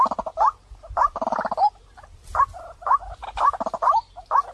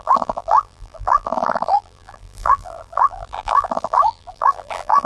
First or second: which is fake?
second